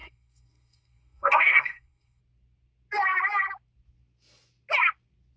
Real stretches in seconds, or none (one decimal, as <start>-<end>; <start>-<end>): 2.2-5.4